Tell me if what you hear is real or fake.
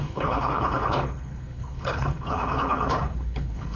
fake